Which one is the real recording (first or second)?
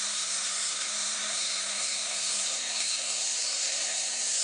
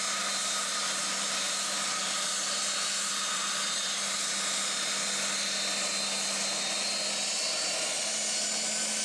second